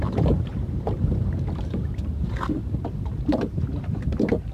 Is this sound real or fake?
fake